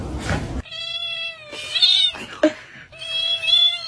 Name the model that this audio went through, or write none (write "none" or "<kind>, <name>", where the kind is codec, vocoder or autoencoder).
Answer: none